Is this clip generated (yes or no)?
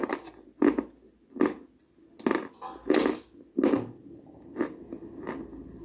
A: no